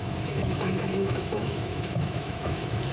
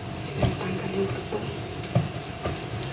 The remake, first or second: first